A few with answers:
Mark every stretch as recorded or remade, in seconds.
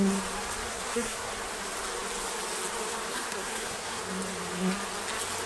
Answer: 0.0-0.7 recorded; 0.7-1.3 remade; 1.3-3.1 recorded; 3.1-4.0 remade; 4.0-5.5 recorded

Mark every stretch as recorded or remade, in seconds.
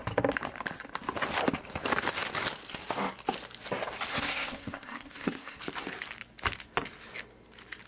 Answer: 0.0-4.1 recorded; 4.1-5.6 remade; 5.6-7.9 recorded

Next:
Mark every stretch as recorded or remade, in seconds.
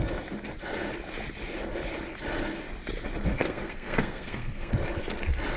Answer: 0.0-3.3 recorded; 3.3-4.7 remade; 4.7-5.6 recorded